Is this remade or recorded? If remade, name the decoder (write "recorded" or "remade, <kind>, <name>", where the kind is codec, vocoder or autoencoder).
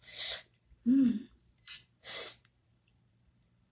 remade, vocoder, BigVGAN v2